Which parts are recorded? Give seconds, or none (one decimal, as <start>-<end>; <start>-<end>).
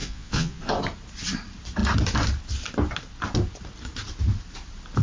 0.6-5.0